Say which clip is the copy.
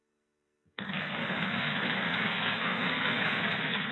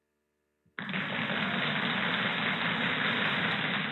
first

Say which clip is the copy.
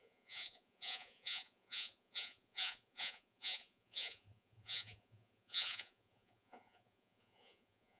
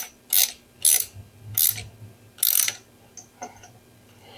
first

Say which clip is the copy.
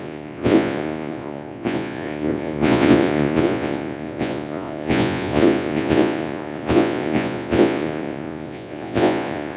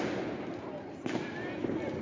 first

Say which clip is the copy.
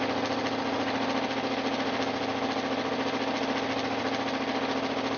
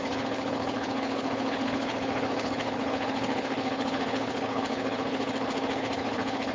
second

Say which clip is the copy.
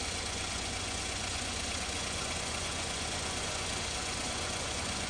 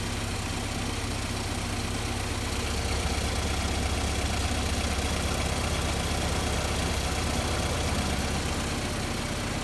first